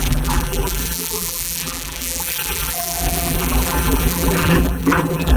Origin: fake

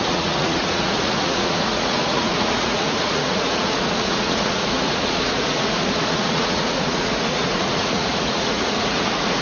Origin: fake